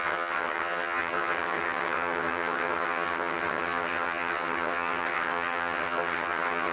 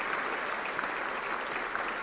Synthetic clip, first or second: first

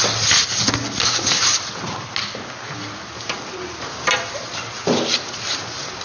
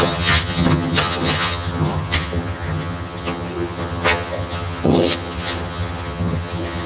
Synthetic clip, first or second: second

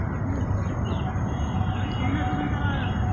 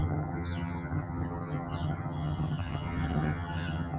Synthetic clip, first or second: second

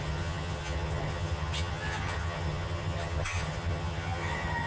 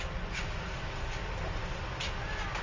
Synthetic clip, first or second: first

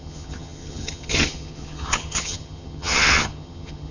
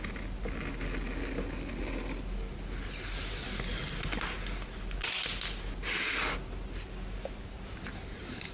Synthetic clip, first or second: first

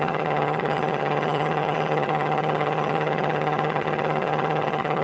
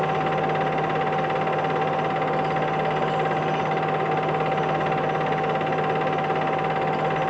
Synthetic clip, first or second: first